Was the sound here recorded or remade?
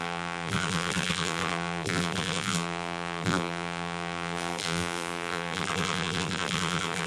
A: remade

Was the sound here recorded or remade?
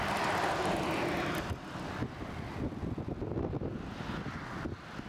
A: recorded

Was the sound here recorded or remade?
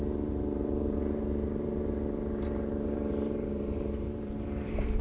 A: remade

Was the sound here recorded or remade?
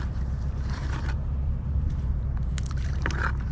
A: remade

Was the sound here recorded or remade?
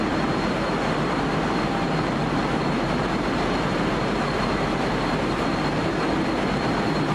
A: remade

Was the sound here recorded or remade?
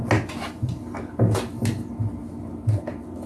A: recorded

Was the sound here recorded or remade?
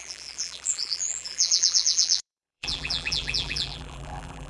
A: remade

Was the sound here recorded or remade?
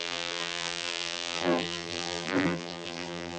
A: remade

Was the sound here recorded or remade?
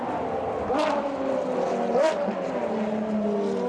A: recorded